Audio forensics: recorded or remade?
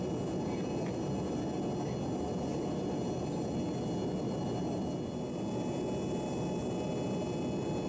recorded